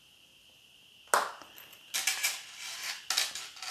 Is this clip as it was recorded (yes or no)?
yes